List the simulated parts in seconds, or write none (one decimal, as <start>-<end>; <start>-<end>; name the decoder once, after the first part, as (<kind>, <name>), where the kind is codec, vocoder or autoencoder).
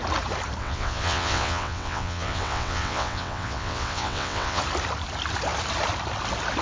0.6-4.6 (vocoder, WaveNeXt)